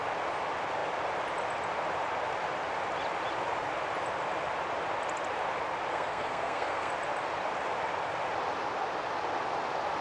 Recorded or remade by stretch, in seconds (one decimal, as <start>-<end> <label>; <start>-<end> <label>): 0.0-5.9 recorded; 5.9-6.9 remade; 6.9-10.0 recorded